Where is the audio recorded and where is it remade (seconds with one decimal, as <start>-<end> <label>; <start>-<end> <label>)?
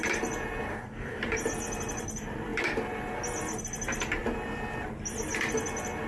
0.0-0.7 recorded; 0.7-1.2 remade; 1.2-6.1 recorded